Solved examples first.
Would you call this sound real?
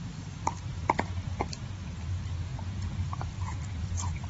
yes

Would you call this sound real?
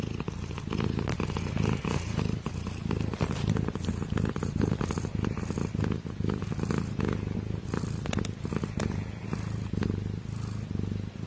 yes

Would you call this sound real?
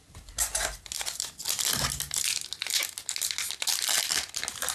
yes